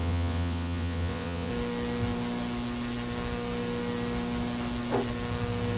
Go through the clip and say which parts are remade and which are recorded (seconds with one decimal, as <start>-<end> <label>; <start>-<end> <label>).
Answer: 0.0-1.5 remade; 1.5-5.8 recorded